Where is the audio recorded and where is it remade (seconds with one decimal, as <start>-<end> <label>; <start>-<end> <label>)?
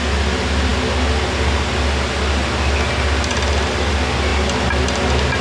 0.0-5.4 recorded